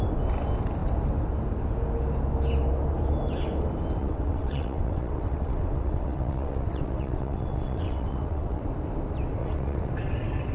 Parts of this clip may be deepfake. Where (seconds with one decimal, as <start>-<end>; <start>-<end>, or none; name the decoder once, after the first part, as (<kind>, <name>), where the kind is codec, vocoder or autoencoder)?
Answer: 4.0-8.6 (vocoder, WaveNeXt); 9.4-9.9